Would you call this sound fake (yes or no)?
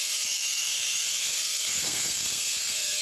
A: yes